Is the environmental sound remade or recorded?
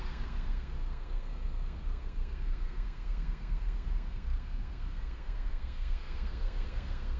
remade